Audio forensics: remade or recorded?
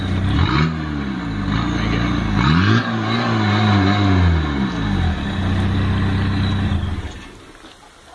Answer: recorded